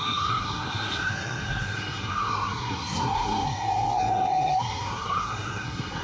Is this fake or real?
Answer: fake